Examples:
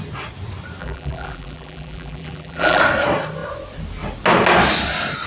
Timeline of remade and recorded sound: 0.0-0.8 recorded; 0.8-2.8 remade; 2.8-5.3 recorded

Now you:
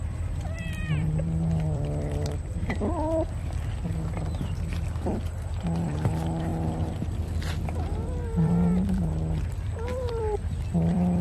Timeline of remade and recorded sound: 0.0-11.2 remade

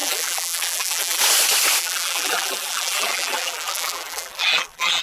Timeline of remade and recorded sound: 0.0-1.2 remade; 1.2-1.8 recorded; 1.8-5.0 remade

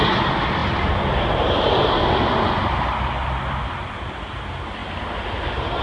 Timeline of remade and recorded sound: 0.0-4.8 recorded; 4.8-5.8 remade

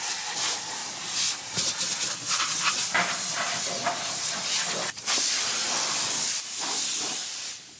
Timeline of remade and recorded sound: 0.0-0.8 remade; 0.8-2.4 recorded; 2.4-2.9 remade; 2.9-7.8 recorded

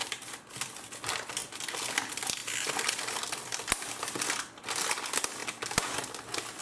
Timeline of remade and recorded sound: 0.0-0.9 remade; 0.9-2.4 recorded; 2.4-3.7 remade; 3.7-6.6 recorded

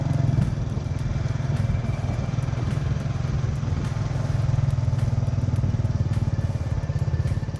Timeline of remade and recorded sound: 0.0-1.1 recorded; 1.1-3.2 remade; 3.2-7.6 recorded

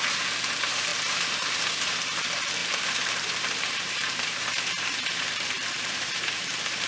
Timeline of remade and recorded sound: 0.0-0.9 recorded; 0.9-1.9 remade; 1.9-2.6 recorded; 2.6-6.9 remade